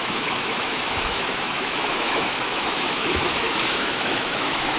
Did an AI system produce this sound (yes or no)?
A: yes